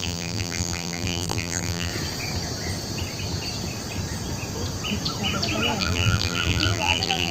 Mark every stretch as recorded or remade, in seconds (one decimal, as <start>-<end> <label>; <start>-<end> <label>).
0.0-1.9 remade; 1.9-5.8 recorded; 5.8-7.3 remade